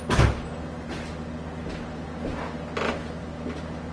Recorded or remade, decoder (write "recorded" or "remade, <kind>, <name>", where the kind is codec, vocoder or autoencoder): recorded